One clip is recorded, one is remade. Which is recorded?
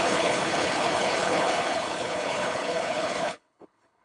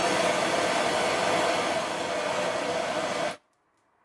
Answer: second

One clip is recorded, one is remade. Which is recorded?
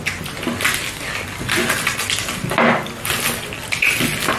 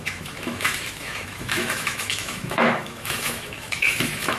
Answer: first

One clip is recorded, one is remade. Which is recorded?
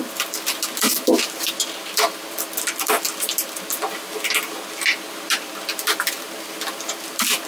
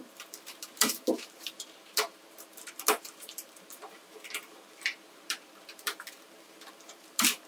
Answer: first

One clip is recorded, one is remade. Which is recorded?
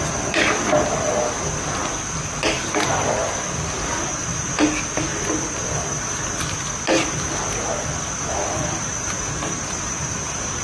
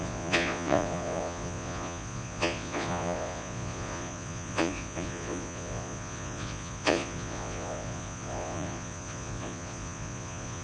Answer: first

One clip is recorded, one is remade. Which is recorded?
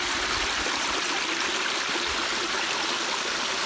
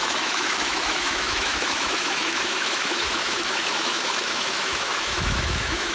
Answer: first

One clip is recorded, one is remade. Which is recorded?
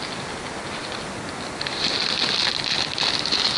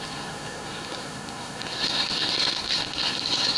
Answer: first